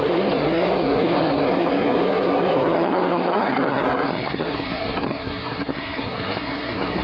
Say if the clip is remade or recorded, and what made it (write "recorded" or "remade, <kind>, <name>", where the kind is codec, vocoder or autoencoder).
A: remade, codec, SNAC